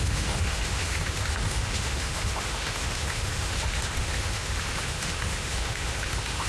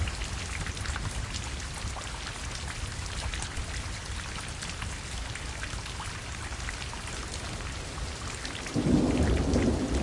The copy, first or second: first